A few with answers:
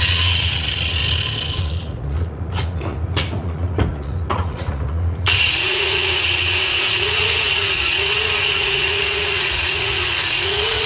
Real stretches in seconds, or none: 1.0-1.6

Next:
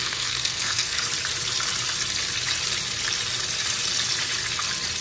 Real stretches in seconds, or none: 1.1-5.0

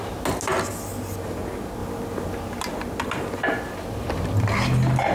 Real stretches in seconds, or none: 0.0-5.1

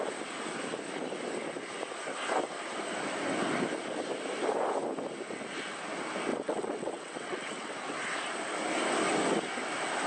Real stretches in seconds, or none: 0.0-6.3; 7.7-10.1

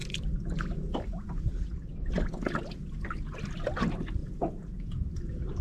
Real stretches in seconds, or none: 0.0-4.2; 5.1-5.6

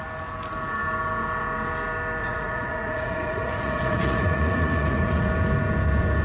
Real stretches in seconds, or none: 0.0-2.2; 5.3-6.2

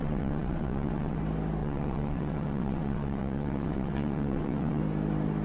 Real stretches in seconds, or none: 1.2-1.6; 4.8-5.4

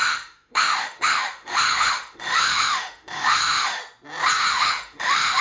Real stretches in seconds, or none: 3.8-4.5